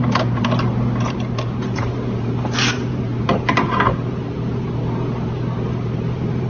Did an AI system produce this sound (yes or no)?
yes